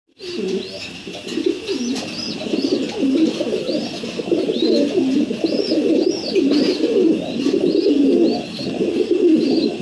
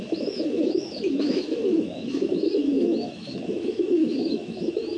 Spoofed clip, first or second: second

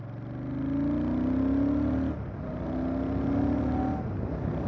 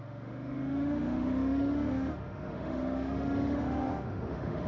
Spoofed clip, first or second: second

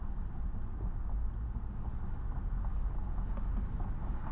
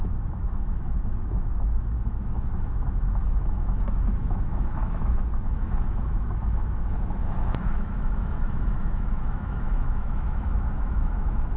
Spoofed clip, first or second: second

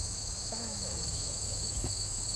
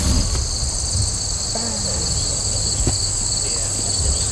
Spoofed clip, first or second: first